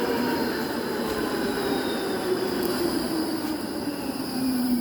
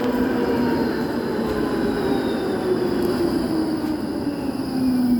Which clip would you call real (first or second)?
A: second